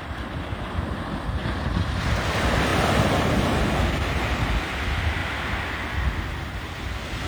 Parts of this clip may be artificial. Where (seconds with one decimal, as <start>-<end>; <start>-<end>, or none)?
1.4-2.0; 5.2-5.7